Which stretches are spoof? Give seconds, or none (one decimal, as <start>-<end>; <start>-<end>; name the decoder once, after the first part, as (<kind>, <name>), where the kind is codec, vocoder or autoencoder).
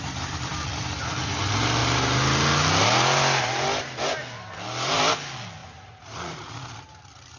5.6-6.7 (vocoder, Vocos)